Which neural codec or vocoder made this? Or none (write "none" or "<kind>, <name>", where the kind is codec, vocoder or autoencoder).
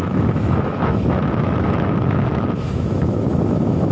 autoencoder, DAC-VAE